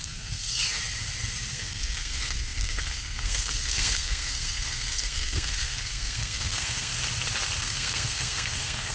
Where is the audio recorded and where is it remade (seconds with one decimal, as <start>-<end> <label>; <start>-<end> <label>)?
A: 0.0-0.6 remade; 0.6-1.5 recorded; 1.5-6.9 remade; 6.9-7.6 recorded; 7.6-8.9 remade